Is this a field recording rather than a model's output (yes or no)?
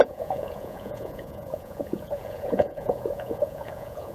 no